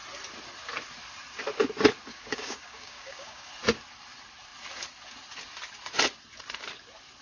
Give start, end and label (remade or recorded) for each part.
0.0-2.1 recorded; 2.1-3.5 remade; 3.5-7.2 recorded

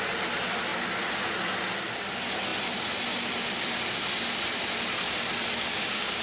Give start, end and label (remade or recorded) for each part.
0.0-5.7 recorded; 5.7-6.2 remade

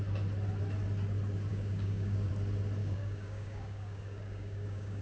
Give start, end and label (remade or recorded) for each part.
0.0-1.5 recorded; 1.5-2.3 remade; 2.3-2.8 recorded; 2.8-5.0 remade